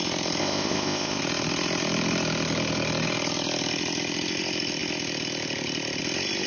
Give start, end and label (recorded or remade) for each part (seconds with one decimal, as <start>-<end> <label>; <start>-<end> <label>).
0.0-0.4 recorded; 0.4-1.2 remade; 1.2-6.5 recorded